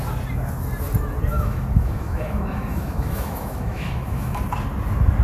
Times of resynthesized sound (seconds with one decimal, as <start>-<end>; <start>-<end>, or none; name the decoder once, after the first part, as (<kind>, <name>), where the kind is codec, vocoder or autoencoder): 1.3-4.4 (autoencoder, DAC-VAE)